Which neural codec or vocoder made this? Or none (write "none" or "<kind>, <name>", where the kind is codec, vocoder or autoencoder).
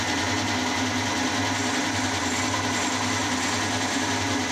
none